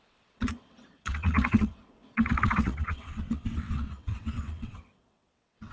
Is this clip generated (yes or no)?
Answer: yes